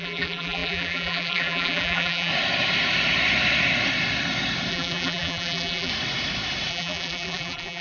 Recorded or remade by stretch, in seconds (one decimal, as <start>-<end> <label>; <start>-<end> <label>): 0.0-2.3 remade; 2.3-4.7 recorded; 4.7-5.9 remade; 5.9-6.7 recorded; 6.7-7.8 remade